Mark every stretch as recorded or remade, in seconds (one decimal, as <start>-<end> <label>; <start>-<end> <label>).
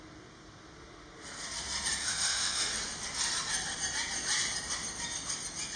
0.0-2.0 recorded; 2.0-2.7 remade; 2.7-5.8 recorded